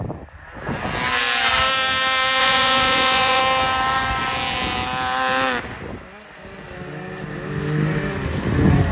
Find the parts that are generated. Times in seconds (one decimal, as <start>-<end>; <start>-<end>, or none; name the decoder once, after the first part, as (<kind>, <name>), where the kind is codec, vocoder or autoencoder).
2.4-3.4 (vocoder, Vocos)